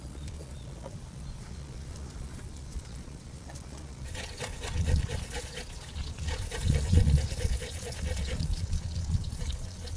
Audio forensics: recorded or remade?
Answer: remade